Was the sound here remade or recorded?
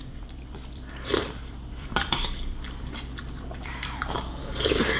remade